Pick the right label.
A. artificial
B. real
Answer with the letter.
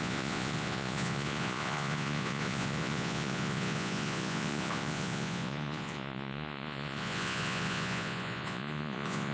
A